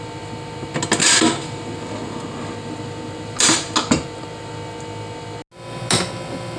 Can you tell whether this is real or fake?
real